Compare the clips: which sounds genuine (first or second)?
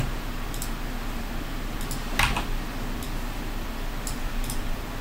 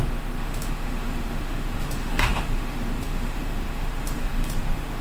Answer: first